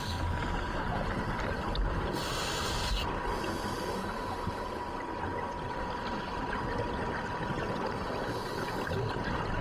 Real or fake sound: real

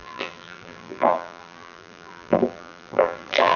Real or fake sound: fake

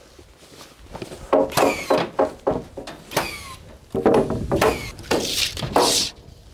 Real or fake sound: real